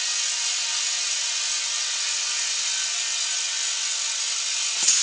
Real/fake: real